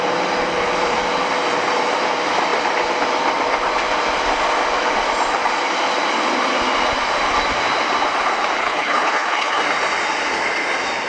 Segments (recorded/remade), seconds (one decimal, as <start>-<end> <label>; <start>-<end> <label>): 0.0-8.6 recorded; 8.6-9.6 remade; 9.6-11.1 recorded